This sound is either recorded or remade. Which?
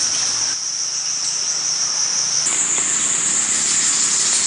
recorded